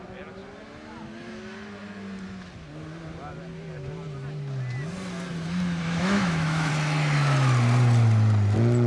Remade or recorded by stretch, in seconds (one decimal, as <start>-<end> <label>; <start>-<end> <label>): 0.0-5.8 recorded; 5.8-6.7 remade; 6.7-8.9 recorded